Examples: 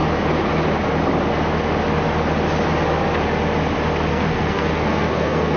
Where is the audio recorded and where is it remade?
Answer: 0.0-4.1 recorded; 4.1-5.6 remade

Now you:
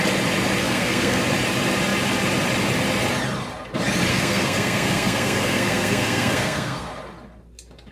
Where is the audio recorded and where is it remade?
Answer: 0.0-0.6 recorded; 0.6-1.2 remade; 1.2-4.1 recorded; 4.1-6.9 remade; 6.9-7.9 recorded